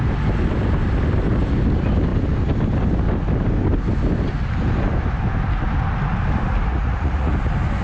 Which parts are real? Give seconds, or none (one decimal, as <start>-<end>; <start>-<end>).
0.0-6.7; 7.3-7.8

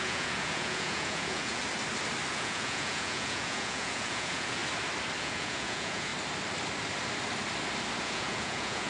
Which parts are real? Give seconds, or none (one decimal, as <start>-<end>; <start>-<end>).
1.6-2.3; 4.6-5.2; 6.1-8.0

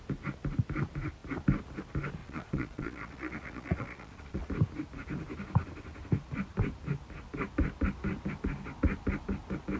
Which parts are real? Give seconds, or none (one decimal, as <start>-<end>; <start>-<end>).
0.0-2.2; 4.5-9.8